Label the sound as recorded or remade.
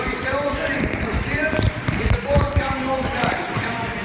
remade